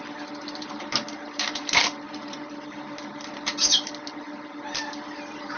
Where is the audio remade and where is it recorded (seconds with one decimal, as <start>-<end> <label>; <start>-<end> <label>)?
0.0-5.6 remade